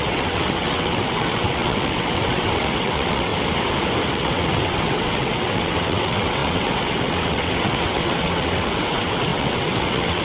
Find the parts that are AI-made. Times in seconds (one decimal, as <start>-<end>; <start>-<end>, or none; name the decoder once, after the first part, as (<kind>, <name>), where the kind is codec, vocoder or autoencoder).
0.0-3.3 (vocoder, WaveNeXt); 4.1-10.2